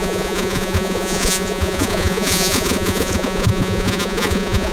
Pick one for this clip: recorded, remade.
remade